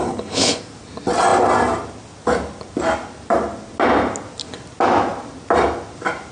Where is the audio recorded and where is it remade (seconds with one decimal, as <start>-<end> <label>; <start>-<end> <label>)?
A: 0.0-0.6 remade; 0.6-6.3 recorded